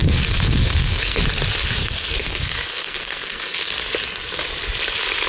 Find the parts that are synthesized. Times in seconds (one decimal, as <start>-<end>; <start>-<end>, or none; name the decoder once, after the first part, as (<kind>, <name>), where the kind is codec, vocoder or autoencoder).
0.0-1.2 (codec, SNAC); 1.8-3.7